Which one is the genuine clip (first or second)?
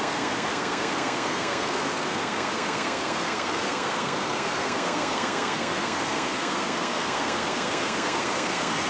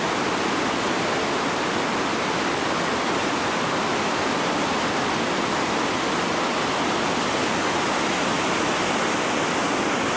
second